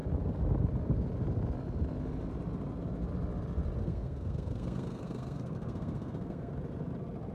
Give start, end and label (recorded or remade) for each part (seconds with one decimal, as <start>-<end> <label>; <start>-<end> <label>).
0.0-3.8 recorded; 3.8-6.5 remade; 6.5-7.3 recorded